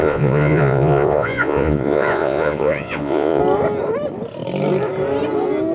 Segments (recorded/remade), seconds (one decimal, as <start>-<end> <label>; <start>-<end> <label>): 0.0-3.4 remade; 3.4-5.7 recorded